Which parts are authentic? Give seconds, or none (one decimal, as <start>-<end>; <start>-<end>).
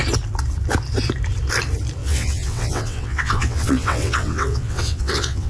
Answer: 0.0-2.0